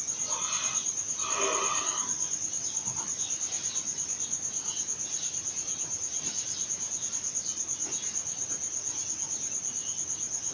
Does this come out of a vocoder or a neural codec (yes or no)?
no